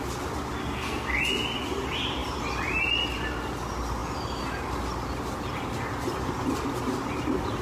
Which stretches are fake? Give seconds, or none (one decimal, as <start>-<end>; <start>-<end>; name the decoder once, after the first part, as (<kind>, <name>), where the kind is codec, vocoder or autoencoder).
0.6-1.2 (codec, SNAC)